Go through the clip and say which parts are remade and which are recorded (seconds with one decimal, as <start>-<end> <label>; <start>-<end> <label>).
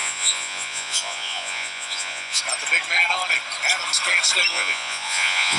0.0-2.4 remade; 2.4-4.5 recorded; 4.5-5.6 remade